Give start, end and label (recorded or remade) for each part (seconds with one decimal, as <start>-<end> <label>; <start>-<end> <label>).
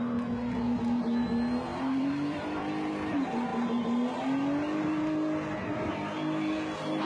0.0-1.7 recorded; 1.7-2.9 remade; 2.9-7.1 recorded